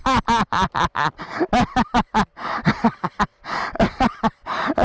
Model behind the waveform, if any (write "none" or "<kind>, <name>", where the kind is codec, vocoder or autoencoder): none